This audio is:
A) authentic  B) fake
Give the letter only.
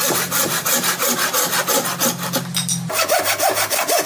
A